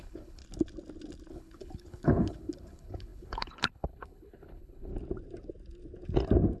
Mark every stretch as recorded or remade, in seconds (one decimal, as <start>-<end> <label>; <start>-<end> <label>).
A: 0.0-0.4 remade; 0.4-1.3 recorded; 1.3-4.9 remade; 4.9-6.6 recorded